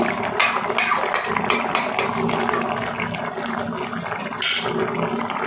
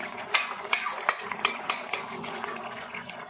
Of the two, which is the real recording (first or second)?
first